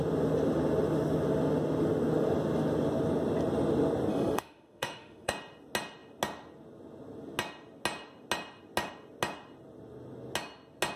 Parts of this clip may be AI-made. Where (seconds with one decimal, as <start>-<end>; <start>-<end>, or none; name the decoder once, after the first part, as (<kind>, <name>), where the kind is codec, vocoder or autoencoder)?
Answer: 4.1-5.3 (autoencoder, DAC-VAE)